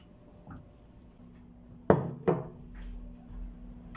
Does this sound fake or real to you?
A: real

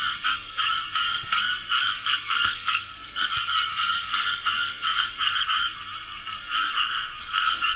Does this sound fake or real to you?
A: fake